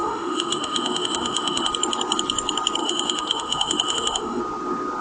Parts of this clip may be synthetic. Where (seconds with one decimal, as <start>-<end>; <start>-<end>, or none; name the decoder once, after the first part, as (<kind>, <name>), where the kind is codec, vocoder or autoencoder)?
0.0-1.7 (autoencoder, DAC-VAE); 2.8-4.4